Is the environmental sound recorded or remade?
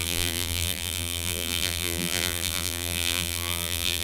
remade